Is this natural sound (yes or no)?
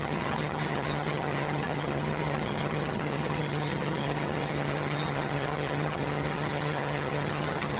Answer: no